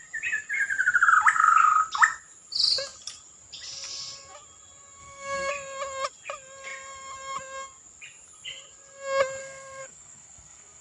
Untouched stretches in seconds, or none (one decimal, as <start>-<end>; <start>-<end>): 0.0-5.0; 5.5-9.4